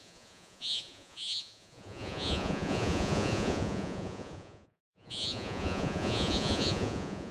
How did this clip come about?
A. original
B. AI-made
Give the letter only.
B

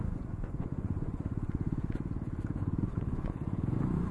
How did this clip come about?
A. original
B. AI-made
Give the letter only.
B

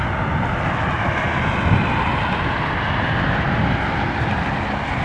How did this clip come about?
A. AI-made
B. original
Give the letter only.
B